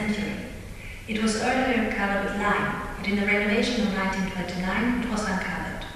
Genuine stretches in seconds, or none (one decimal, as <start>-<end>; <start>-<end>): 1.6-2.2